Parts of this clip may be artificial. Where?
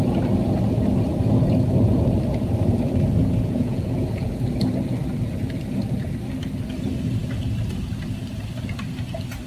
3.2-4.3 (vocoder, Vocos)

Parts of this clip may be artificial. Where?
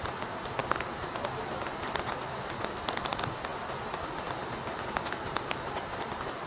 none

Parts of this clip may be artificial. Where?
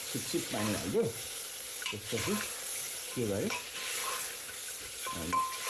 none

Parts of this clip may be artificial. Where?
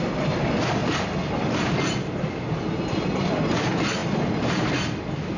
none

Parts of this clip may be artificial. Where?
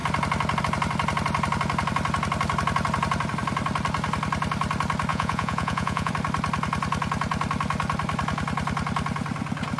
5.1-6.1 (vocoder, Vocos)